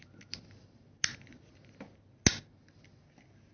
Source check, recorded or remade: recorded